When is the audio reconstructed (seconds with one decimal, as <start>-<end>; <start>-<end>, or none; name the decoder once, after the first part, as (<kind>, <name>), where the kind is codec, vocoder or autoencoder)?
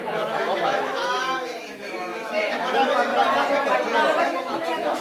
0.0-3.1 (autoencoder, DAC-VAE); 4.2-5.0